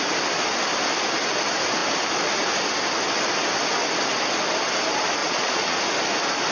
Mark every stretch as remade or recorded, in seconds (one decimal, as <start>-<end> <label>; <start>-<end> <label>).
0.0-5.2 recorded; 5.2-5.8 remade; 5.8-6.5 recorded